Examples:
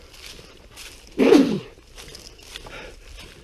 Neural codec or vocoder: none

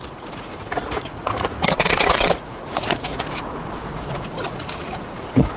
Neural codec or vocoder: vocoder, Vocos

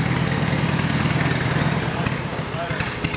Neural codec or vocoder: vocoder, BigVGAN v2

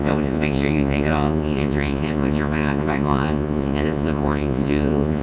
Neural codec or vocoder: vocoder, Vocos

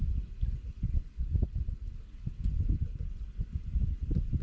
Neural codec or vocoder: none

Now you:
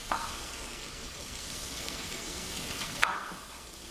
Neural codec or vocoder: codec, SNAC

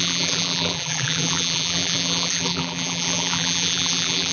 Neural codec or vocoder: vocoder, BigVGAN v2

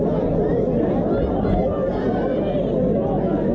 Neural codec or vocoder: none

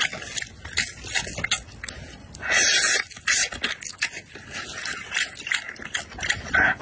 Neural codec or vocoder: none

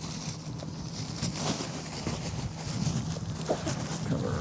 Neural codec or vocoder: vocoder, BigVGAN v2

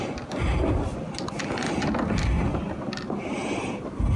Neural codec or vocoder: none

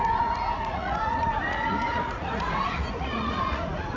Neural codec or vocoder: vocoder, Vocos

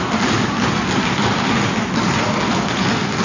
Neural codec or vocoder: none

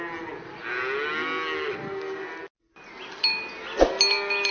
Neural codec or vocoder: none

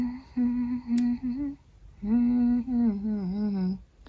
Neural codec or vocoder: none